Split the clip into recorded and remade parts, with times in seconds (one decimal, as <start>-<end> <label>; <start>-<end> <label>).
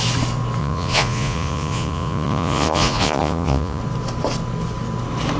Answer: 0.0-0.6 recorded; 0.6-3.8 remade; 3.8-5.4 recorded